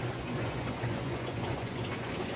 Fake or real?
fake